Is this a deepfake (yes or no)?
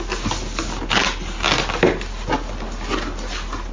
no